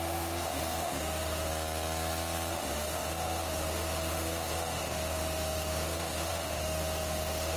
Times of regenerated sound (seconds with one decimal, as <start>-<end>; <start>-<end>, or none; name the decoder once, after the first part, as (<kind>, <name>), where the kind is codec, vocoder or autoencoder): 0.0-1.5 (autoencoder, DAC-VAE); 2.5-7.6